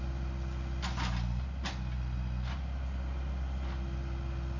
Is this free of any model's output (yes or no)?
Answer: yes